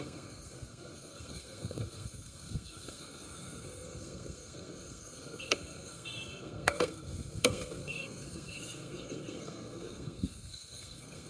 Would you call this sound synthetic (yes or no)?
yes